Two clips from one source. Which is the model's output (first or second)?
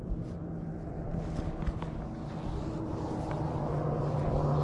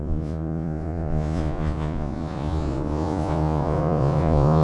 second